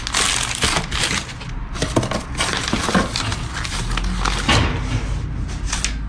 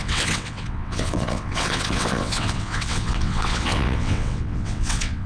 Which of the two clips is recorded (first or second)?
first